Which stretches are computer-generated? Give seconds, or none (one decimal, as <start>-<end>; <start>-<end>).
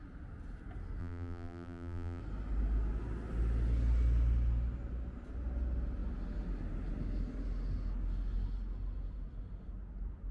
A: 1.0-2.2